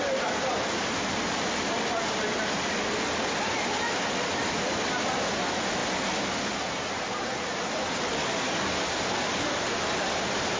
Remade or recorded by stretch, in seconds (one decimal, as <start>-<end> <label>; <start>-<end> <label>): 0.0-10.6 recorded

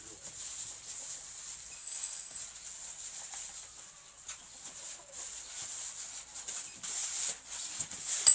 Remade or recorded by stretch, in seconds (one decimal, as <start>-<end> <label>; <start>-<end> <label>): 0.0-1.8 recorded; 1.8-2.4 remade; 2.4-8.3 recorded